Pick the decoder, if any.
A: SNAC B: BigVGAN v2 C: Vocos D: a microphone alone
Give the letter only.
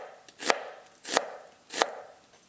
D